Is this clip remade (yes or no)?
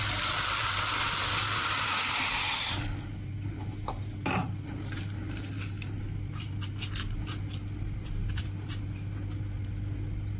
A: no